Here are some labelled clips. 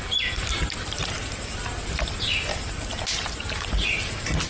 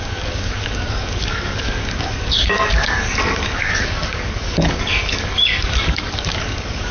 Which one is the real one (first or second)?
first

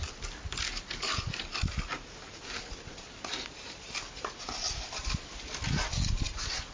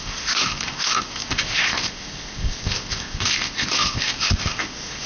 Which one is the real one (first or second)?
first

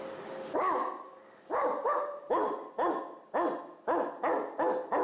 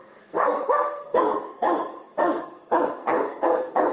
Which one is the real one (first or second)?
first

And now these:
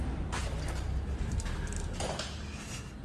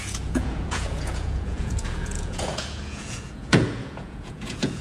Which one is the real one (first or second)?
first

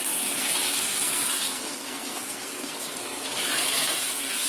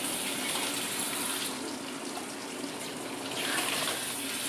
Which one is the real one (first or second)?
second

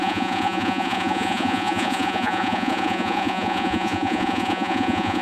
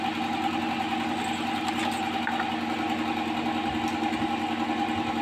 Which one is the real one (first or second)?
second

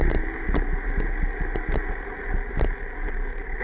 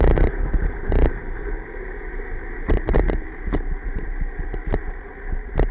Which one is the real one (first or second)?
first